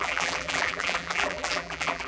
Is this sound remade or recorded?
remade